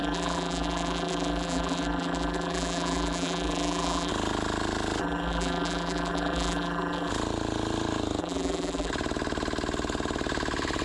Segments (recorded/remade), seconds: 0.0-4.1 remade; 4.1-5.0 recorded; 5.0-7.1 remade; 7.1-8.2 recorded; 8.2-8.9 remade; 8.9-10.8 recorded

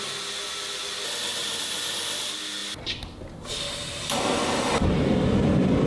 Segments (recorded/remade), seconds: 0.0-1.3 recorded; 1.3-2.2 remade; 2.2-5.9 recorded

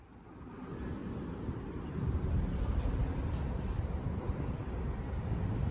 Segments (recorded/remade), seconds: 0.0-1.0 recorded; 1.0-4.2 remade; 4.2-5.7 recorded